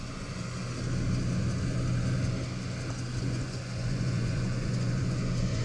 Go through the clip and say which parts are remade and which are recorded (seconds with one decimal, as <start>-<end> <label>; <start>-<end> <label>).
0.0-0.6 remade; 0.6-3.2 recorded; 3.2-5.6 remade